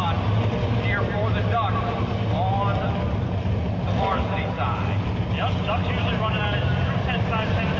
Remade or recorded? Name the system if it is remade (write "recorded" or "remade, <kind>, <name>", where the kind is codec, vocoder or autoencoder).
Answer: recorded